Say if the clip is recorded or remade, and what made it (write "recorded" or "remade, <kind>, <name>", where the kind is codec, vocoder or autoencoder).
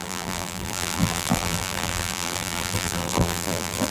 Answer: remade, vocoder, BigVGAN v2